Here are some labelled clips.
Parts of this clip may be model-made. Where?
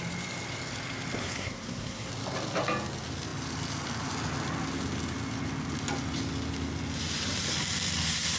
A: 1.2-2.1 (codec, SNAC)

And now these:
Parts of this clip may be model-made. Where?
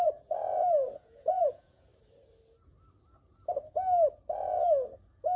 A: 0.0-1.9 (vocoder, Vocos)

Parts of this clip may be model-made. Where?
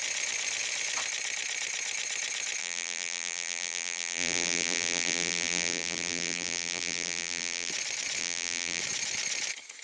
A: 2.6-7.7 (vocoder, BigVGAN v2); 8.2-8.8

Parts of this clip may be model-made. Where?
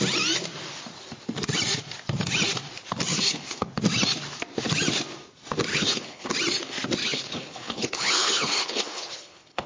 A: 3.1-3.7 (codec, HILCodec); 5.7-6.3; 7.0-9.7